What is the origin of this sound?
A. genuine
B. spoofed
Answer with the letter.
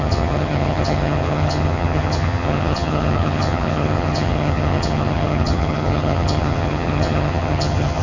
B